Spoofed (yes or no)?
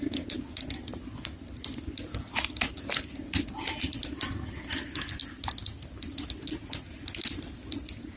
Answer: no